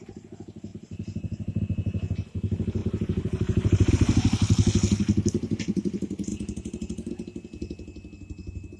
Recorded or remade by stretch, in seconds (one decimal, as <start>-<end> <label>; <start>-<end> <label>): 0.0-0.7 recorded; 0.7-1.6 remade; 1.6-2.8 recorded; 2.8-3.9 remade; 3.9-6.3 recorded; 6.3-7.1 remade; 7.1-8.8 recorded